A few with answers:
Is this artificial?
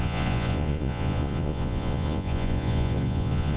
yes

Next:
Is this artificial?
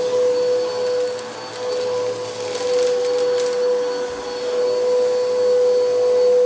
no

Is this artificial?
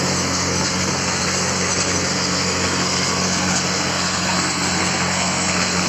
yes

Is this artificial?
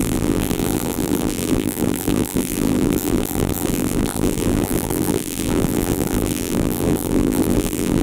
yes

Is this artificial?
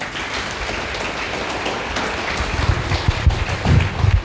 no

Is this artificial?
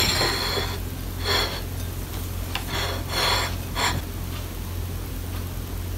no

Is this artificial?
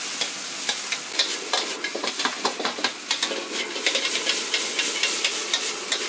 no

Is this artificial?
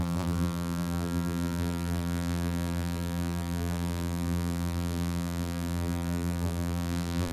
yes